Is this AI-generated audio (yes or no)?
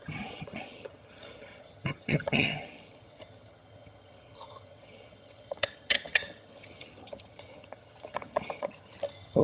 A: yes